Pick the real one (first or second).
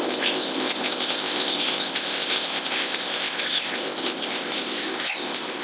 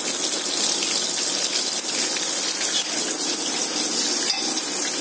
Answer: second